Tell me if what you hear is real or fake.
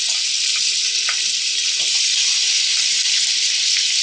real